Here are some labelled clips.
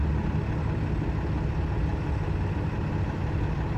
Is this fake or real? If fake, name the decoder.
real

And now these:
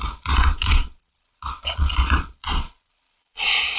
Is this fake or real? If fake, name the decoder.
fake, vocoder, Vocos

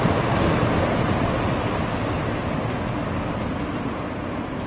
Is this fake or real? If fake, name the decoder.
real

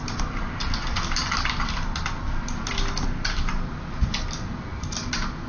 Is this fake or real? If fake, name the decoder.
real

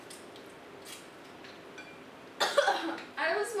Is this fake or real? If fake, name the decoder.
real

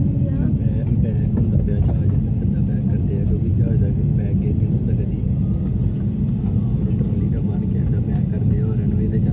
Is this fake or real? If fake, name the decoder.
real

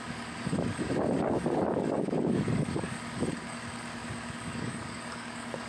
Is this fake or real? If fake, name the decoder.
fake, codec, DAC